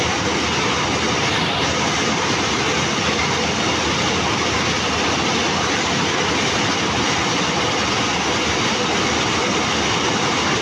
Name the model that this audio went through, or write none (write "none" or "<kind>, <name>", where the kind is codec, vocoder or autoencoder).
none